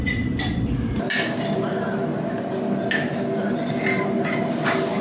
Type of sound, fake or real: real